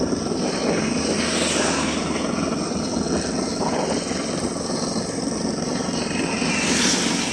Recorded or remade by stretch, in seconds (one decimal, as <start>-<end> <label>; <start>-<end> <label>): 0.0-7.3 recorded